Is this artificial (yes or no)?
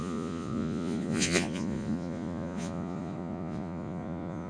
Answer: yes